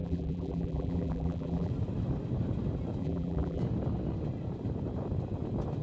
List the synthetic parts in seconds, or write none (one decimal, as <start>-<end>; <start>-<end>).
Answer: 0.0-1.7; 3.0-3.6